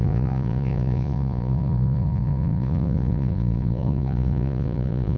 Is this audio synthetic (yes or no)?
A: yes